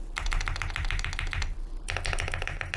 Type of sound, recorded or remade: recorded